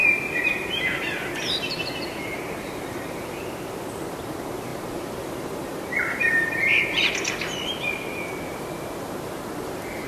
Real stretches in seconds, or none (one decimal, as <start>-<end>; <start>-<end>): 3.8-4.7; 7.1-10.1